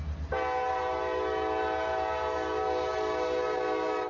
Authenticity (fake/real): real